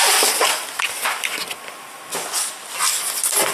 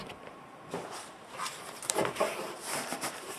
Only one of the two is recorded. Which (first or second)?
first